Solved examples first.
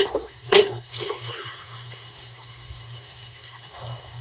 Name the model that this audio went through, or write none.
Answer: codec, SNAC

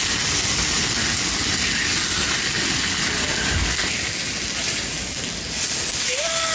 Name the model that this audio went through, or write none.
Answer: none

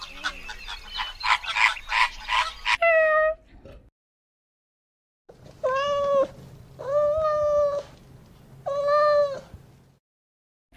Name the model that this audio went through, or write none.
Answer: none